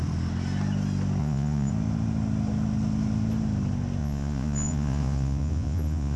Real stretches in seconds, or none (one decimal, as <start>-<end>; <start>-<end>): 0.0-1.2; 1.7-4.0